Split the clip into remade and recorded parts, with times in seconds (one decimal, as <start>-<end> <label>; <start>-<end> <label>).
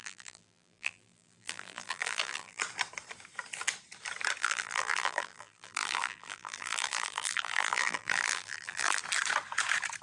0.0-2.6 remade; 2.6-4.4 recorded; 4.4-9.0 remade; 9.0-10.0 recorded